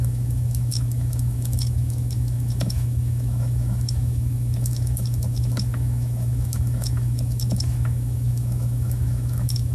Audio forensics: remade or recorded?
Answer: remade